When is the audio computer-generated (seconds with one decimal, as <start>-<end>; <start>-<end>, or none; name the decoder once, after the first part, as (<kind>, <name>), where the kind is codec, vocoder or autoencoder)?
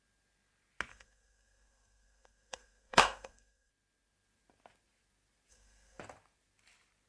0.9-3.7 (codec, SNAC); 5.5-6.0